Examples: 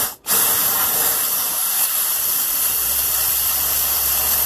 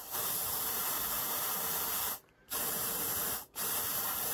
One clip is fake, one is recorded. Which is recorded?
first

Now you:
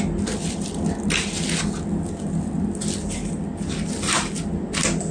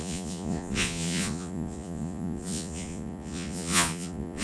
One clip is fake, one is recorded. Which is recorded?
first